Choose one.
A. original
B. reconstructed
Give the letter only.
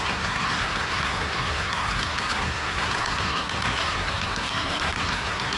B